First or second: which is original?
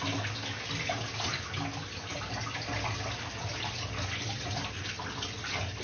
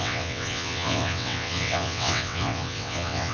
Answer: first